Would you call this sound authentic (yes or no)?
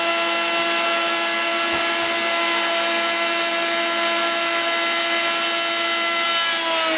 yes